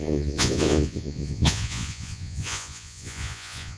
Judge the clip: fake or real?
fake